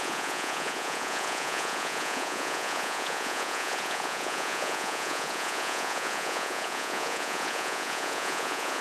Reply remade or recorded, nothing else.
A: remade